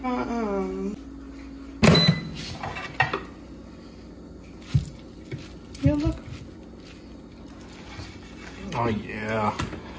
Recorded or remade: recorded